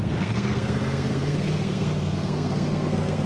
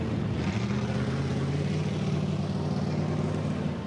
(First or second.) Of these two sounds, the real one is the second